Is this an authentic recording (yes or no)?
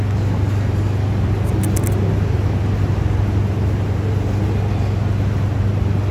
yes